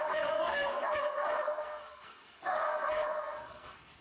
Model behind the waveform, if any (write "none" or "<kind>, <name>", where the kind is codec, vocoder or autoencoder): codec, SNAC